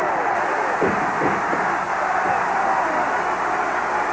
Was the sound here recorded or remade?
recorded